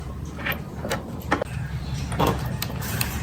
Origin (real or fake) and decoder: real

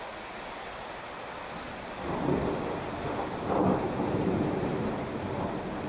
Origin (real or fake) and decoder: real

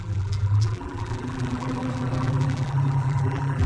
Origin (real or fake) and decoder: fake, vocoder, BigVGAN v2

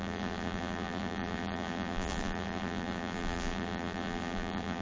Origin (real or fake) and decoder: fake, vocoder, BigVGAN v2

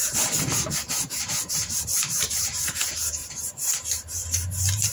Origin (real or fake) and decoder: fake, vocoder, BigVGAN v2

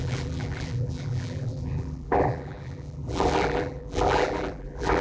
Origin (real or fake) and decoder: fake, vocoder, BigVGAN v2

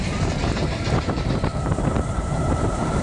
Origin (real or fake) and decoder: fake, vocoder, BigVGAN v2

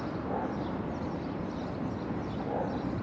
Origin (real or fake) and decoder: fake, vocoder, BigVGAN v2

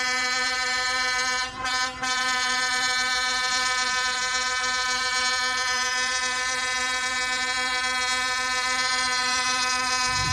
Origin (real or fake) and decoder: fake, vocoder, BigVGAN v2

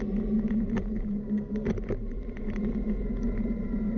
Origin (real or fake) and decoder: fake, vocoder, BigVGAN v2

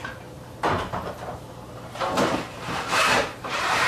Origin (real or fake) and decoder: fake, vocoder, BigVGAN v2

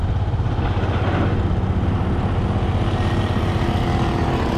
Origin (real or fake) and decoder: real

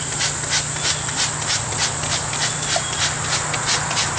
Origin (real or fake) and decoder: real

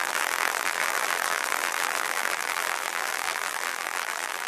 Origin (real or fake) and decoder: fake, vocoder, BigVGAN v2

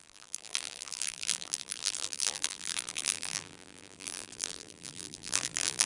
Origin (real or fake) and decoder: fake, vocoder, BigVGAN v2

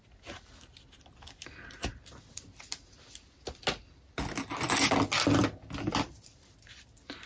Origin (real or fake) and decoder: real